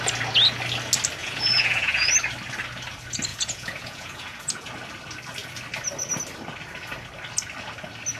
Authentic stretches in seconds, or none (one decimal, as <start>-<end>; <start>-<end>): 0.0-1.2; 2.1-3.3; 4.7-8.2